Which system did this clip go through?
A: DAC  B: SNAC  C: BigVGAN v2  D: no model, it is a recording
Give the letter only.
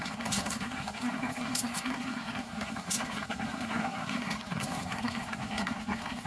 B